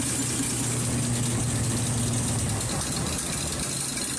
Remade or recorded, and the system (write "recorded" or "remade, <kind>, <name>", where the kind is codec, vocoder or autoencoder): recorded